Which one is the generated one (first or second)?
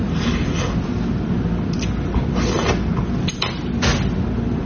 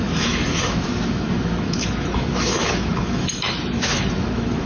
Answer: second